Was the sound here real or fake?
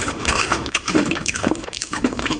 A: fake